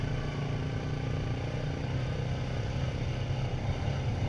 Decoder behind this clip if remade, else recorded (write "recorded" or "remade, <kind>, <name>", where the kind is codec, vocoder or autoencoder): recorded